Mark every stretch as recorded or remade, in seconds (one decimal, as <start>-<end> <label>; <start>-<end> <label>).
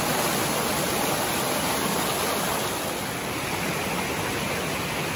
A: 0.0-5.2 recorded